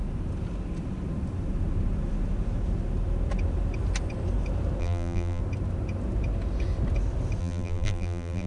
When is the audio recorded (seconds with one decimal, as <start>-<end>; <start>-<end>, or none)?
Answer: 0.0-4.8; 5.4-7.4